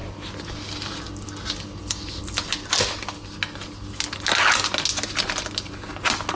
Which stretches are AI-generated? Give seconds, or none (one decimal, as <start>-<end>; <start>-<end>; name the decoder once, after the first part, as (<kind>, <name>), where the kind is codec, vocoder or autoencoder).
none